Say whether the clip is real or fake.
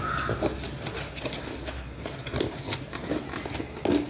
real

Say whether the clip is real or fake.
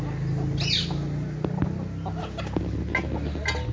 real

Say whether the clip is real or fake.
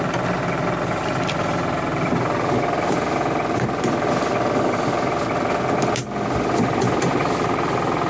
real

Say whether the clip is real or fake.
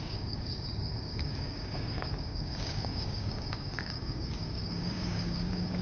fake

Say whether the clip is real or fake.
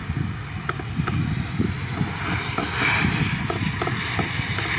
real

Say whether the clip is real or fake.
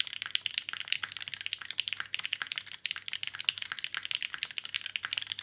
real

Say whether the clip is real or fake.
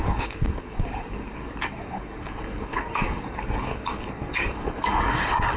fake